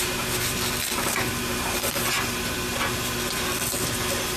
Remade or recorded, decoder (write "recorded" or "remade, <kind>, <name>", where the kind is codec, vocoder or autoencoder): recorded